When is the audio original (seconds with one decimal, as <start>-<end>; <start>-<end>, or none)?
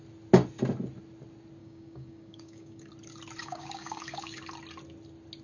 0.0-1.6; 2.9-3.4; 4.4-5.4